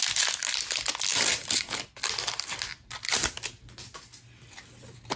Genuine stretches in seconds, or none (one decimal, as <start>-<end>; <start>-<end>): 0.0-5.2

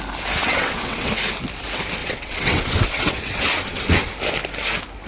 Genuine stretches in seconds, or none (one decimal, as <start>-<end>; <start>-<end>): 0.0-0.4; 1.1-2.0; 4.1-5.1